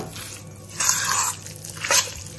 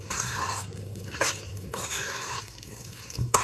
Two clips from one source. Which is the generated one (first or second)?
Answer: second